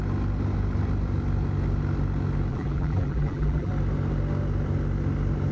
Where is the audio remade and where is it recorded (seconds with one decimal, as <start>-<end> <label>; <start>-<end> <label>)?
0.0-2.5 recorded; 2.5-3.7 remade; 3.7-5.5 recorded